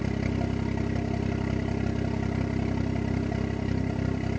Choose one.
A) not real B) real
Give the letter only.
B